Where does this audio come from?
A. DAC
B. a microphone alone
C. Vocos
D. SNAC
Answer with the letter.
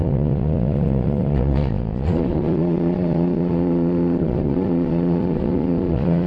C